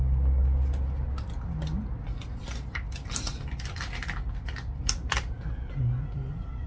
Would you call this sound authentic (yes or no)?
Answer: yes